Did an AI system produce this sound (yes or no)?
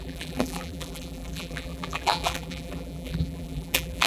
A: yes